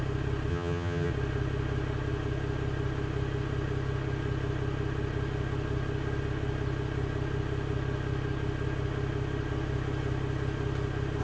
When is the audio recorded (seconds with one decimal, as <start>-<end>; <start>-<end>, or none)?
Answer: 0.0-0.5; 1.1-11.2